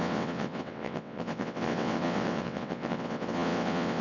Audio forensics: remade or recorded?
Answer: remade